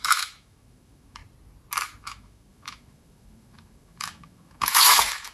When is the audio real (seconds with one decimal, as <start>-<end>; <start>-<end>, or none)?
1.2-2.0

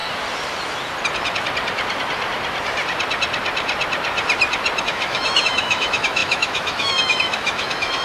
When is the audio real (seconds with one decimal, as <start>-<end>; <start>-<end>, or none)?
0.0-4.8